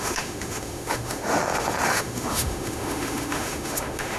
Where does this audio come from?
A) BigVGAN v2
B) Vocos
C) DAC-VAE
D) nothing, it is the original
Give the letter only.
C